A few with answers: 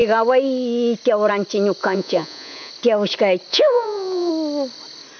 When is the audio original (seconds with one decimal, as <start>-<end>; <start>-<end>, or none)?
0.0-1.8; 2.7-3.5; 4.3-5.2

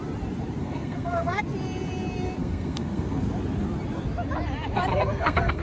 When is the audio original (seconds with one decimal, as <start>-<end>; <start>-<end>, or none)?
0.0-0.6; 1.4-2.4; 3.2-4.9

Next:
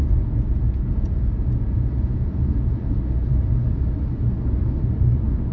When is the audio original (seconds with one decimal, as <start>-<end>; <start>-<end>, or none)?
3.3-5.5